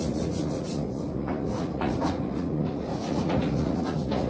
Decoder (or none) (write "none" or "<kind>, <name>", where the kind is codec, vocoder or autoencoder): vocoder, Vocos